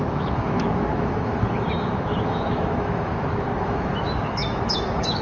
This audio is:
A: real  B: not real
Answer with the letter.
B